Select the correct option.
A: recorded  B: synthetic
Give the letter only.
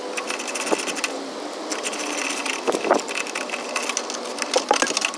A